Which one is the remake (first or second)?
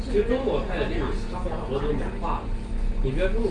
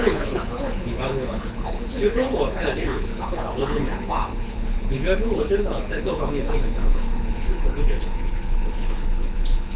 second